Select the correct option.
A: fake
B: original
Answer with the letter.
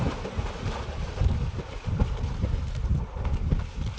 B